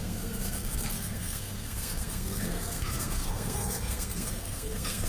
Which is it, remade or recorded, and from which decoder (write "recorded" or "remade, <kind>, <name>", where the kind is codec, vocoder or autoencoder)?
remade, codec, SNAC